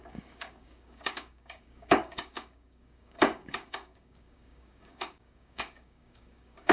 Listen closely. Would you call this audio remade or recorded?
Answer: remade